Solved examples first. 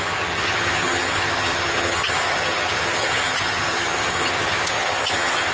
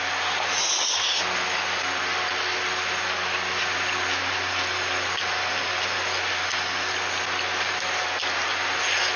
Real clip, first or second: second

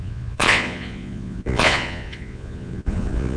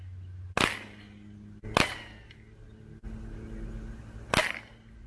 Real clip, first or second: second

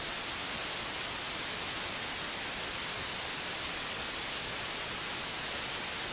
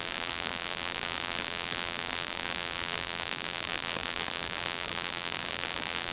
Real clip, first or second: first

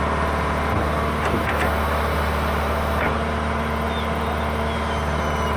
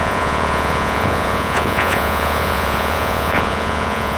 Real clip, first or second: first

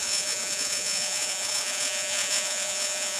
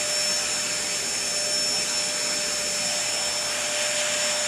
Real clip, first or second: second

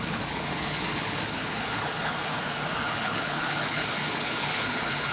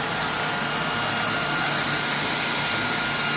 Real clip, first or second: second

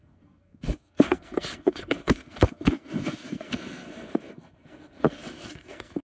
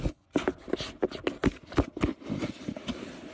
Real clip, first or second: second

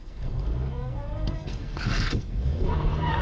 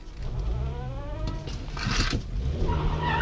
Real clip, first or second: second